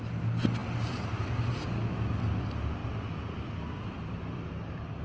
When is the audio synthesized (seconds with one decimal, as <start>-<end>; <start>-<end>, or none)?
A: 2.8-4.5